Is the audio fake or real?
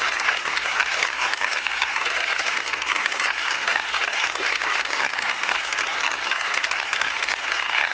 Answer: fake